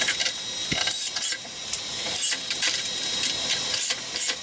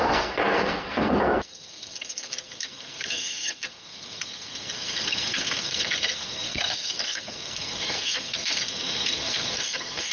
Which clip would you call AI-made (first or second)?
second